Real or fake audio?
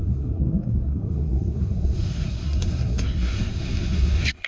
fake